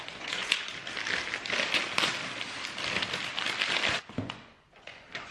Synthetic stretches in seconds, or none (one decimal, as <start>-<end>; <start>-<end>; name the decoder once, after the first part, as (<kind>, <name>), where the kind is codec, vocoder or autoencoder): 0.0-0.7 (vocoder, Vocos); 3.9-5.3